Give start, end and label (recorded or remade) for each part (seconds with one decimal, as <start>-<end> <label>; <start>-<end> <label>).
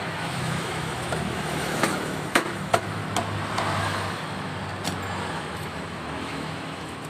0.0-3.0 remade; 3.0-3.8 recorded; 3.8-4.5 remade; 4.5-5.3 recorded; 5.3-7.1 remade